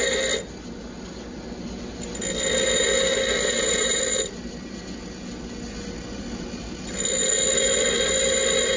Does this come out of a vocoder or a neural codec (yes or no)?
no